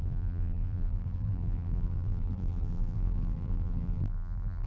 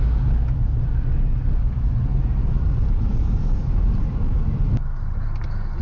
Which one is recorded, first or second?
second